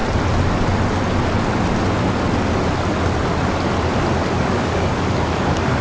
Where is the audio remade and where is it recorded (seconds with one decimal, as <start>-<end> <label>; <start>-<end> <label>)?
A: 0.0-4.2 recorded; 4.2-5.8 remade